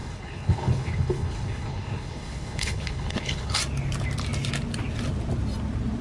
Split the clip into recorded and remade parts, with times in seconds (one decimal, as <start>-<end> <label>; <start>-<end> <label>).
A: 0.0-3.6 remade; 3.6-6.0 recorded